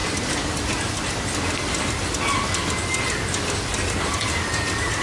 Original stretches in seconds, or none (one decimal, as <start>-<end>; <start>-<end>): 0.0-5.0